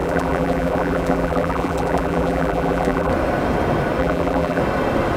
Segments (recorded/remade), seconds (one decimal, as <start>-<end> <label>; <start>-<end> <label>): 0.0-3.1 remade; 3.1-4.0 recorded; 4.0-4.6 remade; 4.6-5.2 recorded